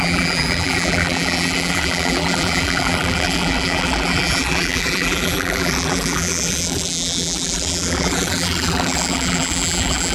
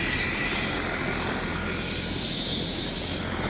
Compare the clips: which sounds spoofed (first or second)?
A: first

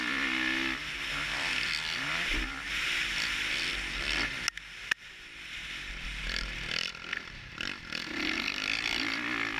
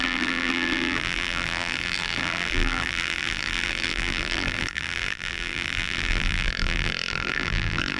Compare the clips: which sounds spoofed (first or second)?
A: second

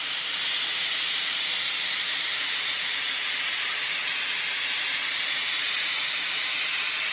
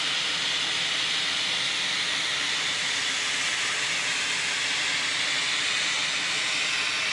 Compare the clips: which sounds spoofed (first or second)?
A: first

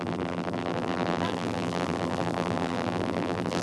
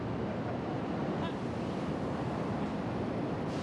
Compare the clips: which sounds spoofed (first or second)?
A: first